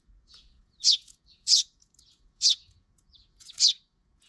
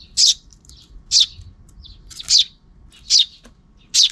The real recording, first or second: second